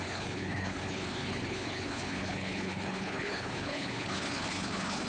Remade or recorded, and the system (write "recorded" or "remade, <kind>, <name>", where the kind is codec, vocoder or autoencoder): remade, codec, HILCodec